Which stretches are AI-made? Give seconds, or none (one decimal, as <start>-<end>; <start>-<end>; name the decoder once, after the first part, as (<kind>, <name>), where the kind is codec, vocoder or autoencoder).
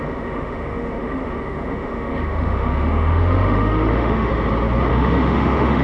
0.0-4.3 (autoencoder, DAC-VAE); 4.9-5.8